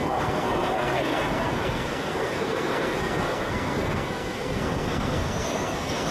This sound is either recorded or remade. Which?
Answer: remade